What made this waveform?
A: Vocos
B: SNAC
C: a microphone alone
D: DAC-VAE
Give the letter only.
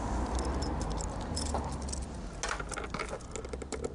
C